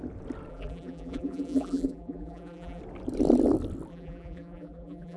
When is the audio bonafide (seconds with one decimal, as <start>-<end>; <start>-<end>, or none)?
0.0-0.5; 2.8-3.9